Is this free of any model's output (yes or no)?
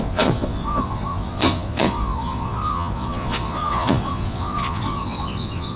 no